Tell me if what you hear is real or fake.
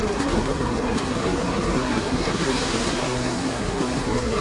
fake